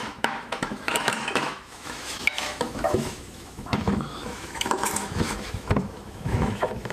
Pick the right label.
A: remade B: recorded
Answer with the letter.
A